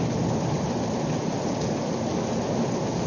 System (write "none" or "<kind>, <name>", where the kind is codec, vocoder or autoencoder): none